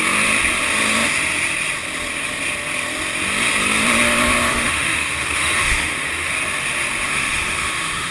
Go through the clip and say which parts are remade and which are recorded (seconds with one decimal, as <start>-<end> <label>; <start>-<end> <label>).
0.0-4.5 recorded; 4.5-6.3 remade; 6.3-7.1 recorded; 7.1-8.1 remade